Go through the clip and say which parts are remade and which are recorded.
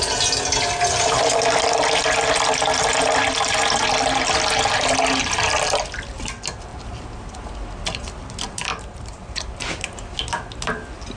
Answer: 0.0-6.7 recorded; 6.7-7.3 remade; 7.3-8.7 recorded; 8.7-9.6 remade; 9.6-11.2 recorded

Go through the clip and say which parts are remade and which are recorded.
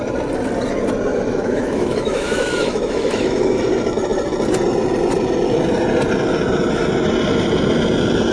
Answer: 0.0-1.1 recorded; 1.1-3.5 remade; 3.5-8.3 recorded